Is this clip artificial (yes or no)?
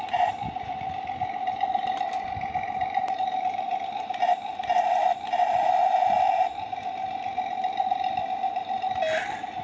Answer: no